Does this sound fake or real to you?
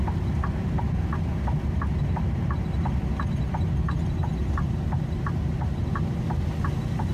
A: real